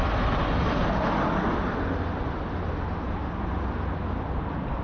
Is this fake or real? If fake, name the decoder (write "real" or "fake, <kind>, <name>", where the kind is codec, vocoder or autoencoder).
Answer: real